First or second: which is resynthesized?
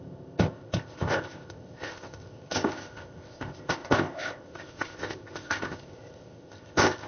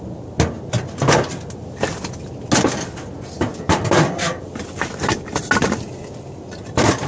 first